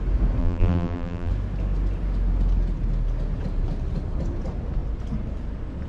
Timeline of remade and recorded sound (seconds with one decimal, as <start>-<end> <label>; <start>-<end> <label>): 0.0-0.4 recorded; 0.4-1.3 remade; 1.3-5.9 recorded